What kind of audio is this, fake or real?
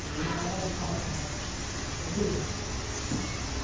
real